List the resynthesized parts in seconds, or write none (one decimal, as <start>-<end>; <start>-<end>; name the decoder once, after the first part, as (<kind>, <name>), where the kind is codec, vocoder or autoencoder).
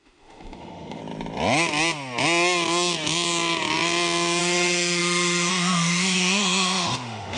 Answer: 0.0-1.0 (autoencoder, DAC-VAE); 4.4-7.4